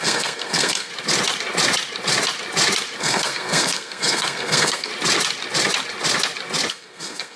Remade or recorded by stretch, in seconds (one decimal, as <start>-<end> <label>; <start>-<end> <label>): 0.0-0.9 remade; 0.9-3.0 recorded; 3.0-4.9 remade; 4.9-6.7 recorded; 6.7-7.4 remade